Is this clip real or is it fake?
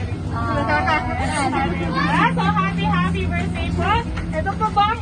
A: real